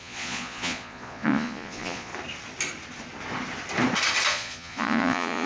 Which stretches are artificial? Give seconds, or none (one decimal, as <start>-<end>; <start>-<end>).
0.0-2.1; 4.3-5.5